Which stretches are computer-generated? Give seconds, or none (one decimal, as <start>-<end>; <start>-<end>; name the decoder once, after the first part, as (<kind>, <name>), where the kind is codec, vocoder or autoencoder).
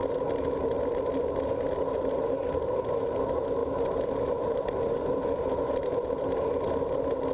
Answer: none